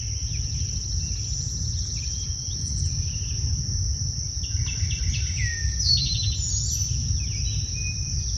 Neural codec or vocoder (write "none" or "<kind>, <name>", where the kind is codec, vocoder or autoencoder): none